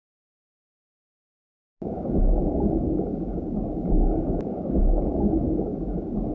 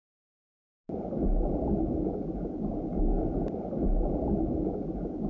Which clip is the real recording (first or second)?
second